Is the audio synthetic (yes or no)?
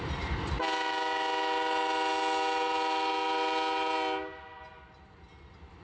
no